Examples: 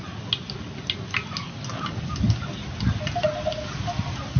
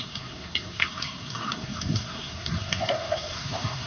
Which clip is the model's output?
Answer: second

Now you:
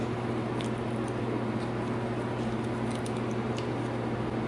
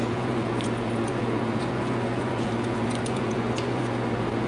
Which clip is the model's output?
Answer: second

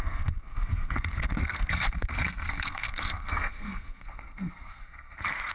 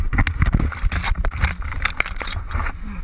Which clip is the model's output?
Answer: first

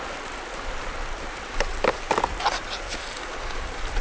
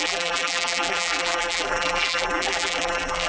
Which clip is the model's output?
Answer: second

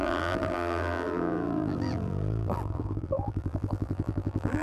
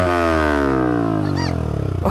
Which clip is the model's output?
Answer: first